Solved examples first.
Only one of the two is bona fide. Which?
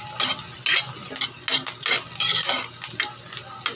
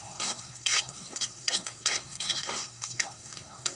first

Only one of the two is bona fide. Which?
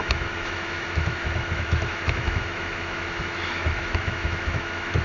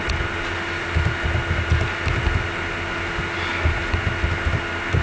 second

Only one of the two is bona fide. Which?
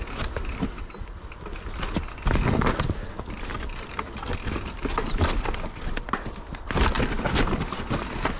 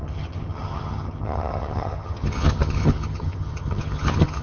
first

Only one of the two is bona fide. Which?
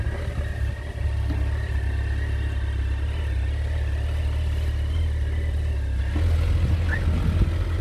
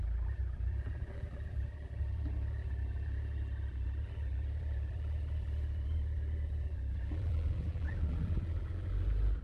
first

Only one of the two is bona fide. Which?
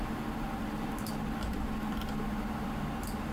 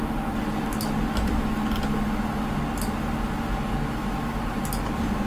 second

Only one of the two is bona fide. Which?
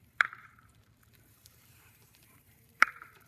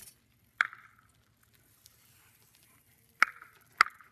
second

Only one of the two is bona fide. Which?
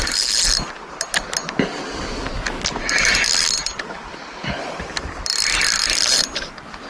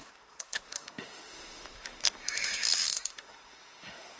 first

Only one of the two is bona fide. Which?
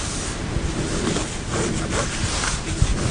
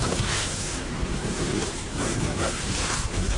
first